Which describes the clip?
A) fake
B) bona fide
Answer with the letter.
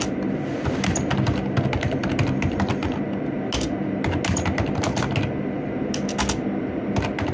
B